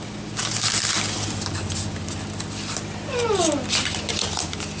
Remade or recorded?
recorded